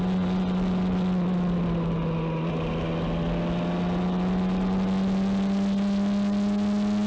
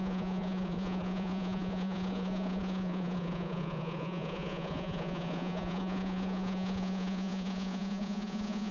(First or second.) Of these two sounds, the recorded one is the first